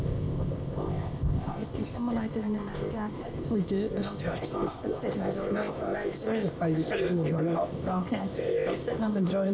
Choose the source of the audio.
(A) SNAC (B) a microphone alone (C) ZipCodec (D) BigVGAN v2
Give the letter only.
C